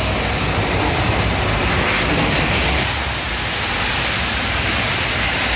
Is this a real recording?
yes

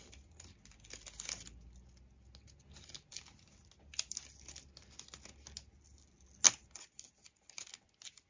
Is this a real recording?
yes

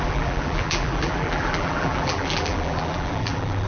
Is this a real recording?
no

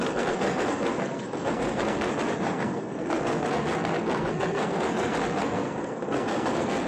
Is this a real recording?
no